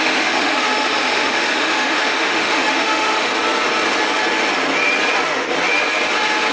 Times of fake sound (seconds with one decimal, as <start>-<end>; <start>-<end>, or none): 0.0-3.3